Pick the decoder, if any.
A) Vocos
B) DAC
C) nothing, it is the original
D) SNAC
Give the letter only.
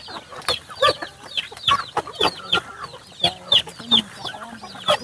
C